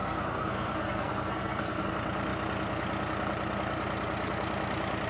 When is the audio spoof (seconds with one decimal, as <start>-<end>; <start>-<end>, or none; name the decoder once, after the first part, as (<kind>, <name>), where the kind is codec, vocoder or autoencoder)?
0.0-1.9 (codec, SNAC)